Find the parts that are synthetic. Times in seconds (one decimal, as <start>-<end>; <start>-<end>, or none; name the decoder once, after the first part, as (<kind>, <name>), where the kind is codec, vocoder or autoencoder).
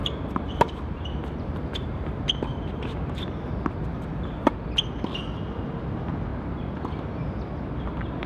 0.0-2.9 (vocoder, BigVGAN v2); 3.9-4.5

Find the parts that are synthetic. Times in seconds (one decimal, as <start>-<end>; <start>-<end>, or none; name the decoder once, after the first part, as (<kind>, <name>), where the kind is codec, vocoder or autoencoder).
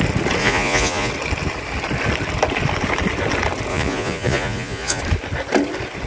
0.4-1.1 (vocoder, Vocos); 3.7-5.0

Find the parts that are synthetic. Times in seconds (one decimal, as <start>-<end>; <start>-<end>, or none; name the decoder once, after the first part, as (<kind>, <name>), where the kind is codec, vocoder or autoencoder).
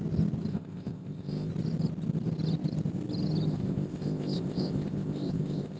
0.5-1.5 (codec, ZipCodec); 3.5-5.8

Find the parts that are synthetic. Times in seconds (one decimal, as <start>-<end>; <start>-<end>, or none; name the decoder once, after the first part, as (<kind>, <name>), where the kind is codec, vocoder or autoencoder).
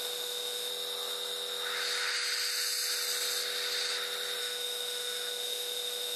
0.0-0.7 (autoencoder, DAC-VAE); 4.4-6.2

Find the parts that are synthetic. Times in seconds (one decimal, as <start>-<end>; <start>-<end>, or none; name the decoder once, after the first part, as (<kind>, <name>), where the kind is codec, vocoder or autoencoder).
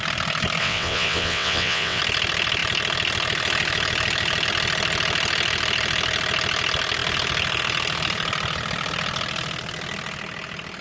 0.6-2.0 (vocoder, WaveNeXt)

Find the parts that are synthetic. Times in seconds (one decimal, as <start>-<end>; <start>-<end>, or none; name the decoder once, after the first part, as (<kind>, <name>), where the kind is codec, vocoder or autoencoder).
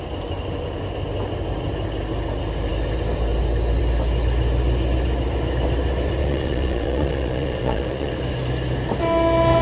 6.2-8.1 (vocoder, Vocos)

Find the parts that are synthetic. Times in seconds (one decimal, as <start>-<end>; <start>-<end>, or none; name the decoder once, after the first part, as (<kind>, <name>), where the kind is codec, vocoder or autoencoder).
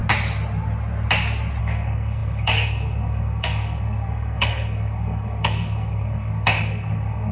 1.6-7.3 (codec, SNAC)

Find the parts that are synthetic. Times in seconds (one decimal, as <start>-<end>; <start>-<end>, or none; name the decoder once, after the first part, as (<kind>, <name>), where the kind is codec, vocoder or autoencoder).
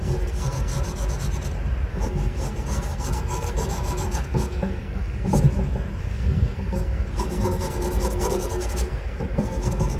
0.0-0.7 (codec, SNAC); 1.9-5.3; 6.0-10.0